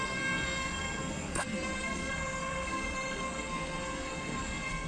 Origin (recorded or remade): remade